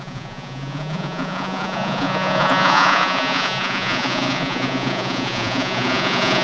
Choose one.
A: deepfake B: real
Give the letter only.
A